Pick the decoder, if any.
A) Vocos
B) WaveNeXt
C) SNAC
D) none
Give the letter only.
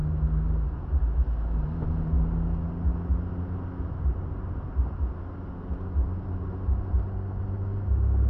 D